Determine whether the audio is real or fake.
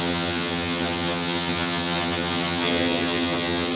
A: fake